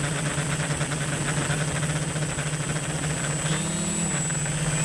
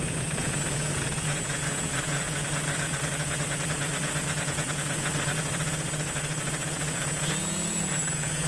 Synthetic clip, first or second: second